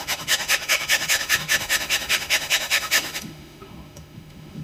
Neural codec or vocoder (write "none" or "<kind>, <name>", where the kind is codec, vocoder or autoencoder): autoencoder, DAC-VAE